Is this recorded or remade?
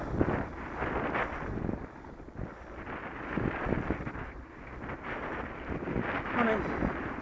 recorded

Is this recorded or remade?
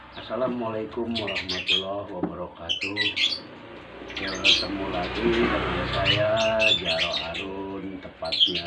recorded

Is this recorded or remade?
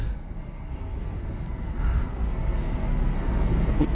remade